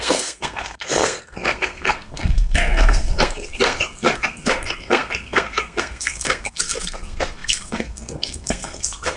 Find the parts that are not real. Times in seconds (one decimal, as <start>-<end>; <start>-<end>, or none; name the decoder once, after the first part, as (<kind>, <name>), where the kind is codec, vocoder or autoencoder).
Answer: 0.0-9.2 (codec, SNAC)